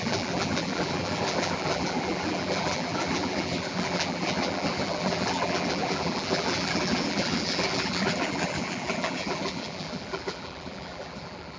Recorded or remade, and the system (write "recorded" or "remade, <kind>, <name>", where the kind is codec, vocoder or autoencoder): remade, vocoder, BigVGAN v2